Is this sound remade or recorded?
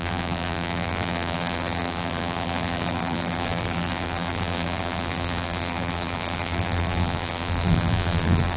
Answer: remade